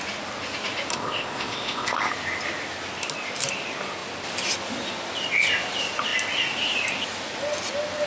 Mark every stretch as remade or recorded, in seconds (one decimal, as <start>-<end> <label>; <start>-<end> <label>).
0.0-0.9 recorded; 0.9-2.1 remade; 2.1-8.1 recorded